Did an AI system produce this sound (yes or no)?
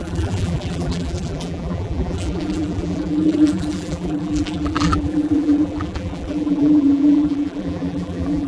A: yes